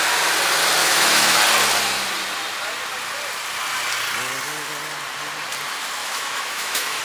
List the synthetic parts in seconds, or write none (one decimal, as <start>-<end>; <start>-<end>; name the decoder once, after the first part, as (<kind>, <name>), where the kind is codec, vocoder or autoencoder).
0.8-1.4 (autoencoder, DAC-VAE); 6.0-7.0